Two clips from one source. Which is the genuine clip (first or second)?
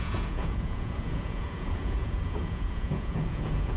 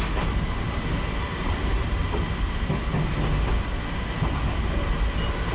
second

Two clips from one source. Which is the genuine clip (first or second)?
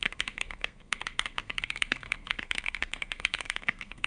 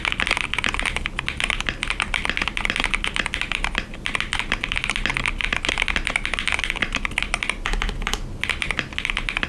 second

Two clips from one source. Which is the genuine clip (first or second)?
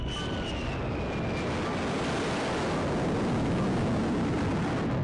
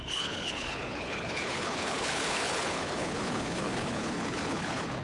first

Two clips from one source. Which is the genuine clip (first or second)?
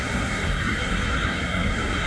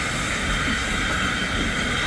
second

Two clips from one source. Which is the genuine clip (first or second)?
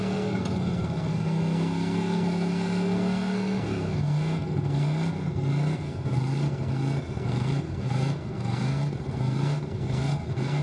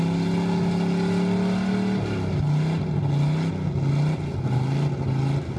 second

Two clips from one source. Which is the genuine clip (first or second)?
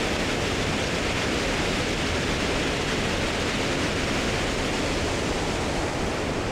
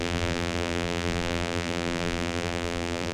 first